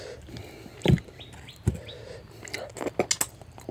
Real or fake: real